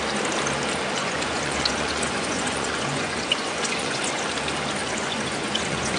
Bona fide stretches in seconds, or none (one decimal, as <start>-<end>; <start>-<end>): 0.0-1.0; 4.2-4.8